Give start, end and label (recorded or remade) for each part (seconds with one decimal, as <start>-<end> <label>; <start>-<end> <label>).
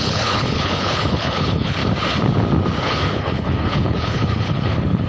0.0-1.8 remade; 1.8-2.8 recorded; 2.8-5.1 remade